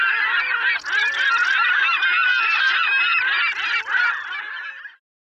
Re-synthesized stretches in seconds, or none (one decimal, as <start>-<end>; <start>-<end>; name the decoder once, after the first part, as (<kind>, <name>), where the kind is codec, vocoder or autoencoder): 0.0-0.5 (vocoder, BigVGAN v2); 1.5-2.3; 3.2-5.2